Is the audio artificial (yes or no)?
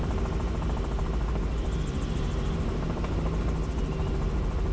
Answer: no